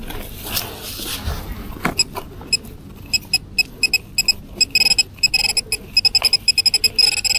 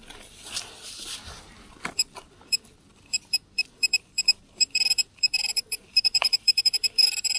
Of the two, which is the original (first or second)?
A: first